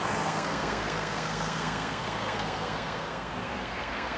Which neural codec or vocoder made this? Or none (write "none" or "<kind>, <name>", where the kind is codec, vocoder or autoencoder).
codec, SNAC